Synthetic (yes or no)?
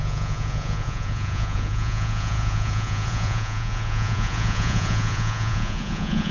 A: yes